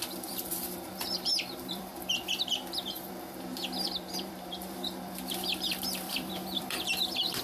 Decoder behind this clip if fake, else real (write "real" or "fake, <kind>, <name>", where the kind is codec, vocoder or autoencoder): fake, vocoder, BigVGAN v2